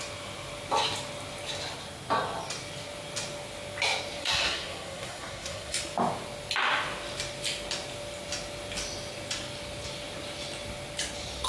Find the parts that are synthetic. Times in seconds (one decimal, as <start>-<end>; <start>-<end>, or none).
4.2-5.8

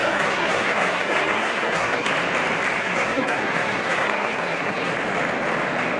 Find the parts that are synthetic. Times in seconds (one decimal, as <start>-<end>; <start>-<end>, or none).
0.0-2.1; 2.8-4.9